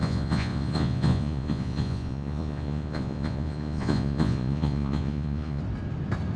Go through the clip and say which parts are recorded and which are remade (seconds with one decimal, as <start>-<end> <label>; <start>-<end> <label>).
0.0-5.6 remade; 5.6-6.4 recorded